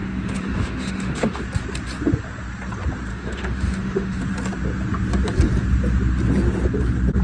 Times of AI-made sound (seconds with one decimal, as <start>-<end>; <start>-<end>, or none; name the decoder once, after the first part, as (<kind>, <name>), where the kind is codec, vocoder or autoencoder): 0.0-1.4 (autoencoder, DAC-VAE); 3.1-4.2